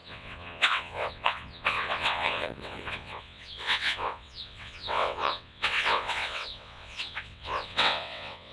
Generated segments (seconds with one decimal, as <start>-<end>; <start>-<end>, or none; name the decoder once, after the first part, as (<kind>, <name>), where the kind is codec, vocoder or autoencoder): 0.0-8.5 (vocoder, WaveNeXt)